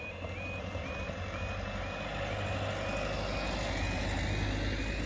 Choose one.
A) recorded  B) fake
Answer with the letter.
A